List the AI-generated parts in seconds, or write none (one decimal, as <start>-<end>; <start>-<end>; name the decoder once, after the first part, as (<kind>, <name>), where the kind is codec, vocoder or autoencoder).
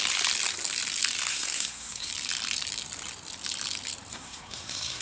1.3-2.1 (codec, SNAC); 4.1-5.0